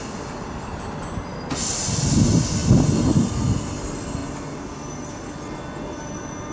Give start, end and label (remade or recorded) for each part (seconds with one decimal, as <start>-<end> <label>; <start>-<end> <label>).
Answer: 0.0-2.6 recorded; 2.6-3.3 remade; 3.3-6.5 recorded